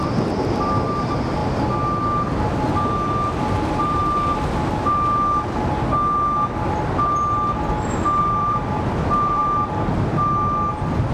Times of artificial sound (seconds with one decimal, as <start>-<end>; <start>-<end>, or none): 0.0-1.4; 3.5-4.0; 8.2-9.4